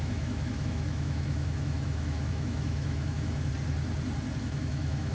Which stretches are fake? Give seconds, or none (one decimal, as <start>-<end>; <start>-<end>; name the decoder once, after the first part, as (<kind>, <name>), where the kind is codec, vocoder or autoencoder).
0.0-3.5 (autoencoder, DAC-VAE); 4.4-5.1